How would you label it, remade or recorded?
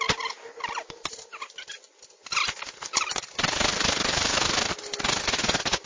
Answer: recorded